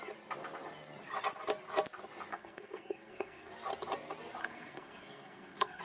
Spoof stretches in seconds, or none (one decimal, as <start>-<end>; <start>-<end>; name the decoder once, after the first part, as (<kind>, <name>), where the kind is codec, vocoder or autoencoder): 2.3-3.5 (codec, SNAC); 4.4-5.8